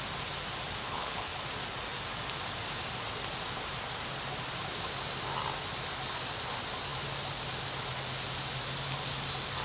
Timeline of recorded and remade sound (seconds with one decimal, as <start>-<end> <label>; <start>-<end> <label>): 0.0-0.8 recorded; 0.8-1.4 remade; 1.4-9.6 recorded